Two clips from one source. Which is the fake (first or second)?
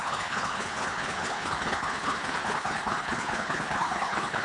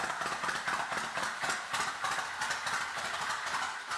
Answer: first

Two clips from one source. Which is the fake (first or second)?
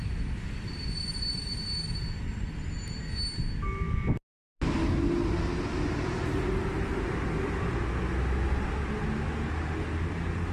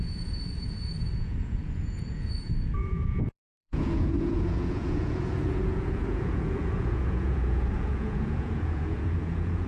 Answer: second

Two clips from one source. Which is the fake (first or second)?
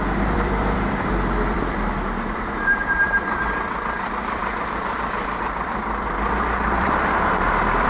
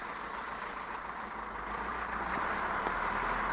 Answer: first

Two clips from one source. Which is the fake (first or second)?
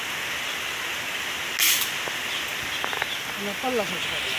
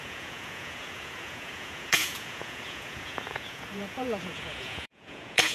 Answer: second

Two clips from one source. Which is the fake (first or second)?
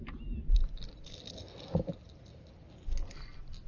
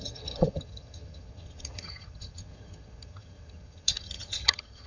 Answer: second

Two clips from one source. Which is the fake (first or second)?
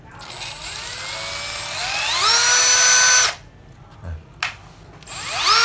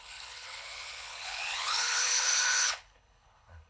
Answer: second